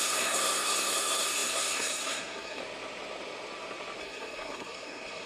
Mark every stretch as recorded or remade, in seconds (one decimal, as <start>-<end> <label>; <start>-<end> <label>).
0.0-2.6 remade; 2.6-4.0 recorded; 4.0-5.3 remade